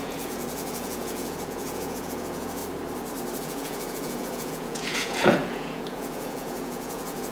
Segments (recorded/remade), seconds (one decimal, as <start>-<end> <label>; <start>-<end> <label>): 0.0-2.6 remade; 2.6-3.4 recorded; 3.4-7.3 remade